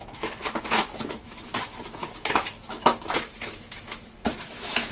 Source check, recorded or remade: remade